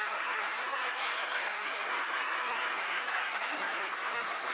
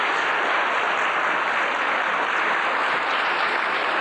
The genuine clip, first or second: second